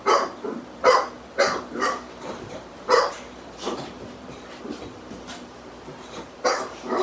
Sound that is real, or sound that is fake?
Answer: fake